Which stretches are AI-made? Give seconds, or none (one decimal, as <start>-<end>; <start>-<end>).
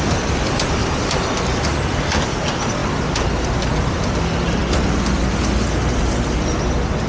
0.8-2.0